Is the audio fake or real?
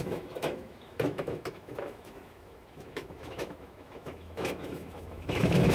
fake